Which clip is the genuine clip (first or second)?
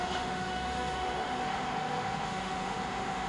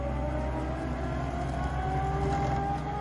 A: second